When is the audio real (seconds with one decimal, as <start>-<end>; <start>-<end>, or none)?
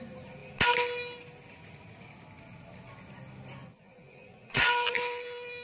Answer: 0.0-3.6; 4.6-5.6